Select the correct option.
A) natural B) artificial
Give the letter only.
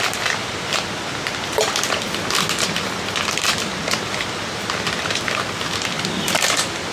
A